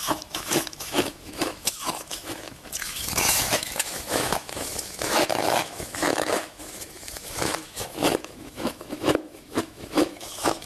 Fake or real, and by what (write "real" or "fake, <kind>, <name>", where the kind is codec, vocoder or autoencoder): fake, autoencoder, DAC-VAE